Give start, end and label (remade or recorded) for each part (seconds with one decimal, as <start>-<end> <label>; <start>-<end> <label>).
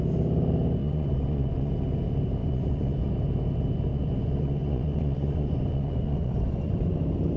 0.0-0.8 recorded; 0.8-1.7 remade; 1.7-2.4 recorded; 2.4-3.1 remade; 3.1-3.9 recorded; 3.9-6.7 remade; 6.7-7.4 recorded